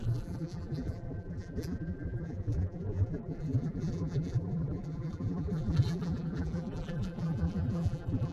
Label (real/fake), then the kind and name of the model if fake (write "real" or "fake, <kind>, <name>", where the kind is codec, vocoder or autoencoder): fake, vocoder, BigVGAN v2